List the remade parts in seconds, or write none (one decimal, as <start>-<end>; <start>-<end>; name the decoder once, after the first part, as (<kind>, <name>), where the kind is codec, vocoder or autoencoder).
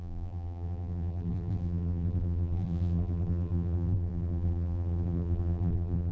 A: 0.0-6.1 (vocoder, BigVGAN v2)